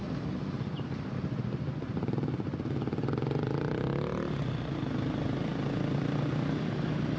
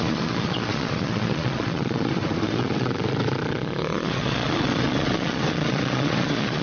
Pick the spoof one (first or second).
second